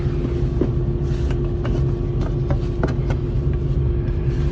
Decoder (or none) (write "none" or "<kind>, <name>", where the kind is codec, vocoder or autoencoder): none